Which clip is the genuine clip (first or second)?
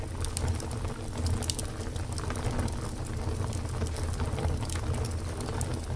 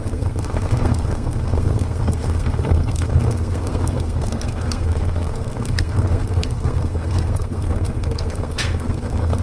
first